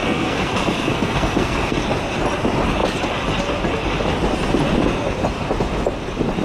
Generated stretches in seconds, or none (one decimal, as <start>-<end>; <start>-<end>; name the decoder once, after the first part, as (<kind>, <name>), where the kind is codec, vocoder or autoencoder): 0.0-1.8 (codec, SNAC)